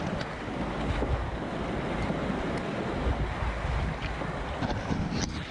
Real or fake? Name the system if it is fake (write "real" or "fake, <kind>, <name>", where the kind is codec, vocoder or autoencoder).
real